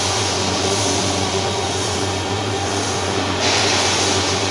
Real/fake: fake